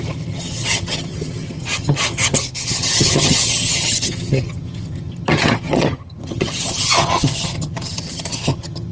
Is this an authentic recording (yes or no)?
no